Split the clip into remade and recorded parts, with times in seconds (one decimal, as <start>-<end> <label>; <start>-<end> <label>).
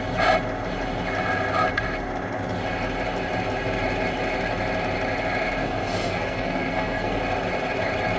0.0-5.6 recorded; 5.6-7.2 remade; 7.2-8.2 recorded